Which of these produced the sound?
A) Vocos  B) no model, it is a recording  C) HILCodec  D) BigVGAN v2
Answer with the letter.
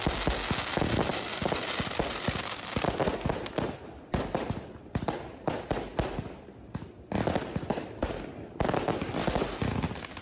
B